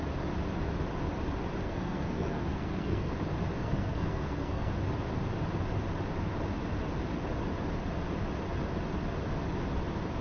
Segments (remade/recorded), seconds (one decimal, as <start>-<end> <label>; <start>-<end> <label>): 0.0-1.6 recorded; 1.6-3.1 remade; 3.1-3.6 recorded; 3.6-4.7 remade; 4.7-10.2 recorded